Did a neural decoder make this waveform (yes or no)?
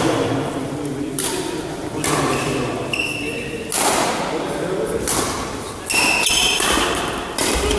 no